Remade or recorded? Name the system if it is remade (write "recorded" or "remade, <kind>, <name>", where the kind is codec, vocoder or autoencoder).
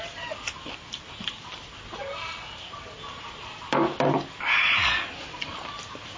recorded